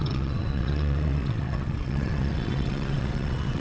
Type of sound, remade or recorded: remade